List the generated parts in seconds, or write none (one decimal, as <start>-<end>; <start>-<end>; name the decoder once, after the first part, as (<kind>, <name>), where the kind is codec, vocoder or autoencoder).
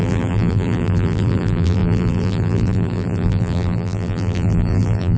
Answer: 0.0-5.2 (vocoder, BigVGAN v2)